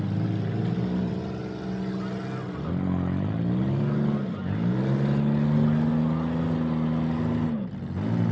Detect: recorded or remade recorded